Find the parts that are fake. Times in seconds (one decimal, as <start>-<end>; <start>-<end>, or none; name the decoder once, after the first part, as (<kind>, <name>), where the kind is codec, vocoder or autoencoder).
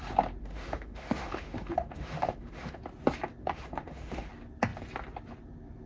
0.4-2.8 (autoencoder, DAC-VAE); 3.4-4.3